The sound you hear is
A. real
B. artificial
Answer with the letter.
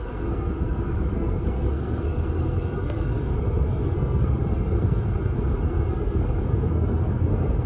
B